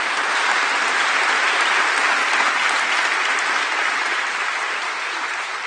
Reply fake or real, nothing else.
real